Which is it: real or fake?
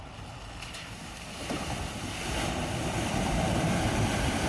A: fake